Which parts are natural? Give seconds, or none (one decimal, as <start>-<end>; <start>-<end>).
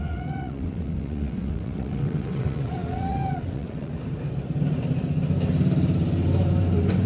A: 3.9-7.1